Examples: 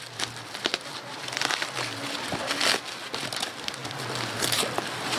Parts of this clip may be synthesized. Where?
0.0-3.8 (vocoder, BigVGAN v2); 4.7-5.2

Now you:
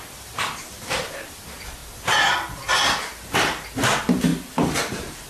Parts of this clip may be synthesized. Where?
0.0-1.8 (vocoder, BigVGAN v2); 2.3-5.3